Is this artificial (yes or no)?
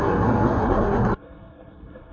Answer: yes